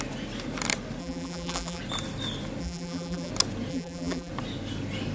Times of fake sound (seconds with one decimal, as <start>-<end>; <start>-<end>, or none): 1.0-1.8; 2.6-3.3; 3.7-4.3